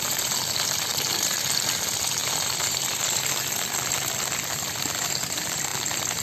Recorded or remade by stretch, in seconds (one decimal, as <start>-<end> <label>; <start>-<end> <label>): 0.0-0.9 recorded; 0.9-1.7 remade; 1.7-2.2 recorded; 2.2-3.3 remade; 3.3-6.2 recorded